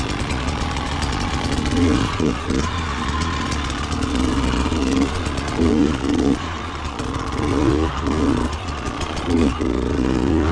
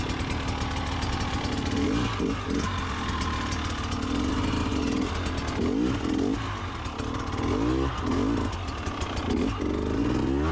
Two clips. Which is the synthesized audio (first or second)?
first